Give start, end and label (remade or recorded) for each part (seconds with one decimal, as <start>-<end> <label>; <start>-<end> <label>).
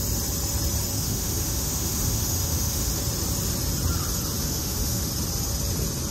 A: 0.0-0.9 recorded; 0.9-3.0 remade; 3.0-4.4 recorded; 4.4-5.1 remade; 5.1-6.1 recorded